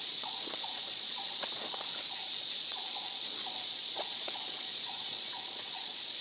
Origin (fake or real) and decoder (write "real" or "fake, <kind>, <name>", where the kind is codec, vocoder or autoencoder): fake, vocoder, Vocos